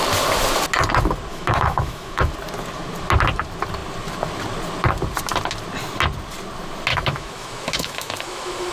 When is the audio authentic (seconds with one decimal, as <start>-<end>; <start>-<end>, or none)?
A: 0.0-1.3; 2.3-6.9